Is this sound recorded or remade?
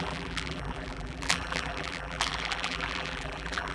remade